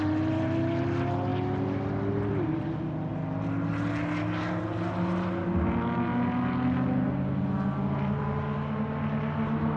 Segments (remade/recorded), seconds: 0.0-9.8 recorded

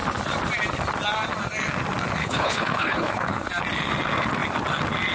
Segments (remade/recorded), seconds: 0.0-2.2 recorded; 2.2-3.5 remade; 3.5-5.1 recorded

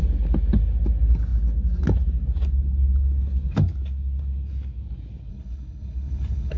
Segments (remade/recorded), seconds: 0.0-5.3 recorded; 5.3-6.6 remade

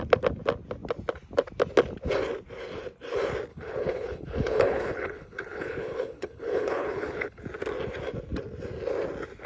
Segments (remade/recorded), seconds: 0.0-3.5 recorded; 3.5-7.4 remade; 7.4-9.5 recorded